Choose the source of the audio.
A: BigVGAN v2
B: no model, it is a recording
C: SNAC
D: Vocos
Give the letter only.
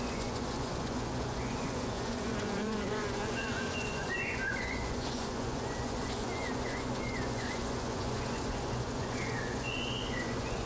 D